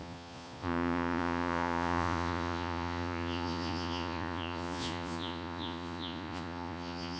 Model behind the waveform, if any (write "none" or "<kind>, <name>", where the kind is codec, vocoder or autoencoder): vocoder, Vocos